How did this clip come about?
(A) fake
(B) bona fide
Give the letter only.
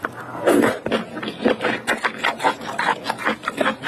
B